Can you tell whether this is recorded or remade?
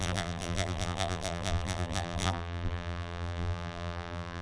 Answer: remade